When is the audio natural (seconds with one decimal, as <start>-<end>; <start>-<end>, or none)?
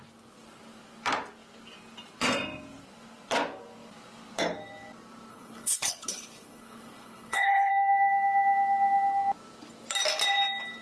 0.0-5.3; 7.7-10.8